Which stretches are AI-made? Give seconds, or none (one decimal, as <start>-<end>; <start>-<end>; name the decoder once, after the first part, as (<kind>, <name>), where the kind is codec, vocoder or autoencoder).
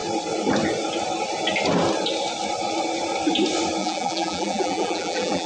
3.8-5.5 (vocoder, BigVGAN v2)